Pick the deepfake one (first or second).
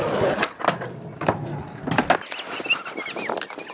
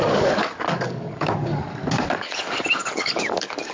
second